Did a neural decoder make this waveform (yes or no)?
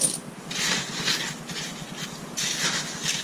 no